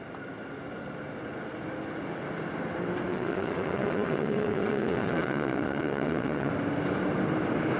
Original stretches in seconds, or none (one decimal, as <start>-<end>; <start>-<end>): 0.0-3.1; 6.5-7.8